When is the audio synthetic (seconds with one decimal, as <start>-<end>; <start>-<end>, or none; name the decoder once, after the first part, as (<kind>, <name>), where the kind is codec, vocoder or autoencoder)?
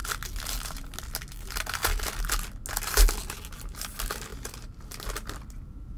none